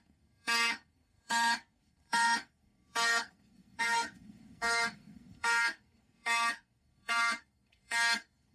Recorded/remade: remade